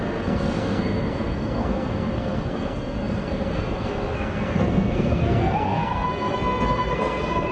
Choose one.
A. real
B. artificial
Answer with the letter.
B